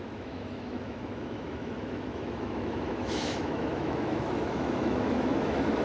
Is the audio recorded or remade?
remade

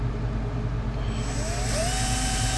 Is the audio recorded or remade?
recorded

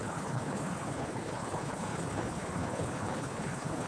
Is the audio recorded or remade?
remade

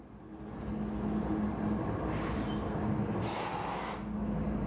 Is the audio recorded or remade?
recorded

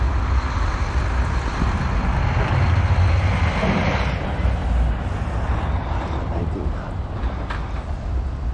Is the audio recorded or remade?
recorded